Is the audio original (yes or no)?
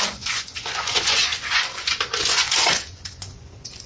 no